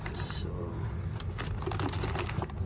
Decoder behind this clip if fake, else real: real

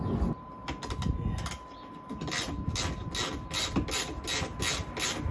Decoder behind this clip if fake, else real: real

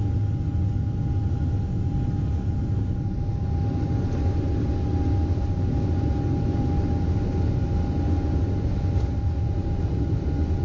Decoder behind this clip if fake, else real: real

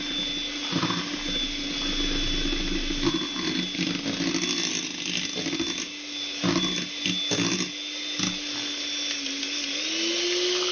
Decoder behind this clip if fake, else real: real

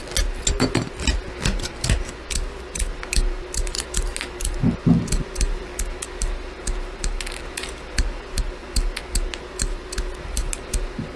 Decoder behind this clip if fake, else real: real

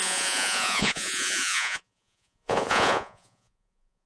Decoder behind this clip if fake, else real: fake, vocoder, Vocos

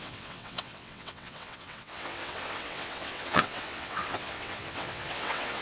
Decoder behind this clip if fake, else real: fake, vocoder, WaveNeXt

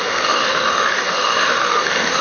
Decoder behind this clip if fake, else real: fake, autoencoder, DAC-VAE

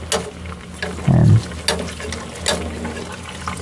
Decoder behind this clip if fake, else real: real